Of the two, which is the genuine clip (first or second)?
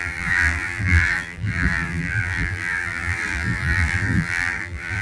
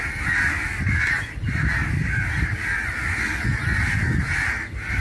second